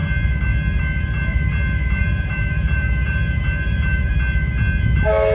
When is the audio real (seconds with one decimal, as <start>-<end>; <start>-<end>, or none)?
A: 0.0-2.0; 4.1-5.3